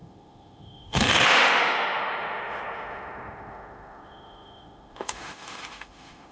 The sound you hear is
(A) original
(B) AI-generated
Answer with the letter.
B